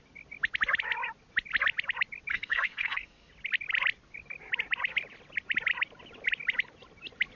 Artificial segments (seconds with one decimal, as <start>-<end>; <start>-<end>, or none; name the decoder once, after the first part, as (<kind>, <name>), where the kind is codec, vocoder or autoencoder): 2.3-3.3 (codec, SNAC)